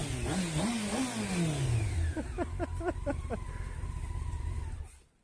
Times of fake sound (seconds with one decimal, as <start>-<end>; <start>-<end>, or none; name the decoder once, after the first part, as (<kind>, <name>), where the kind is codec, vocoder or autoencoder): none